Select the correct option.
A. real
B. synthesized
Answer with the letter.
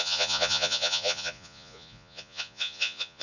B